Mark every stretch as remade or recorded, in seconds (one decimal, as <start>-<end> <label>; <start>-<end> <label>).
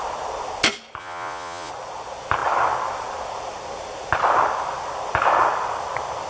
0.0-1.0 recorded; 1.0-1.7 remade; 1.7-6.3 recorded